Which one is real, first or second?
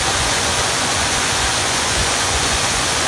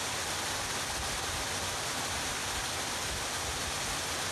second